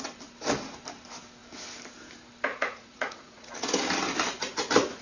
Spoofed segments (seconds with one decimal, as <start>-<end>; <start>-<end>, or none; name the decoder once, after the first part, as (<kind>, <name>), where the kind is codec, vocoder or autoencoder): 2.5-3.5 (vocoder, Vocos)